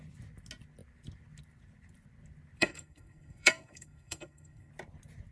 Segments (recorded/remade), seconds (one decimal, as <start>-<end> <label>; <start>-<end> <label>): 0.0-2.6 recorded; 2.6-4.7 remade; 4.7-5.3 recorded